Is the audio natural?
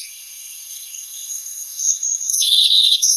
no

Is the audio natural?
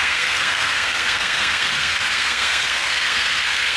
no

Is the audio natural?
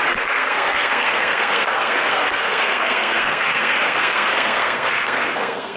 no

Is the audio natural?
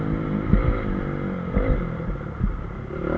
yes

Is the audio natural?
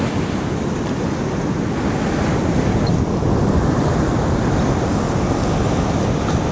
yes